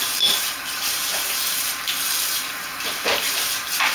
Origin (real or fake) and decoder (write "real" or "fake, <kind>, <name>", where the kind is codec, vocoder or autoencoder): fake, vocoder, BigVGAN v2